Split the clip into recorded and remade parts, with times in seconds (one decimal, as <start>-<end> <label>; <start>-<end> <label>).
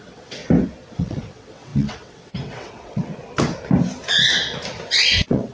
0.0-0.4 remade; 0.4-0.9 recorded; 0.9-3.1 remade; 3.1-5.1 recorded; 5.1-5.5 remade